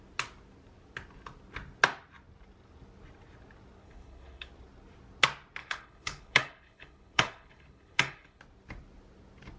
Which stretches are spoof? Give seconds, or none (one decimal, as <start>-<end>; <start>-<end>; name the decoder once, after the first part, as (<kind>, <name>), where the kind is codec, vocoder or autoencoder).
3.8-4.5 (codec, HILCodec); 5.6-8.4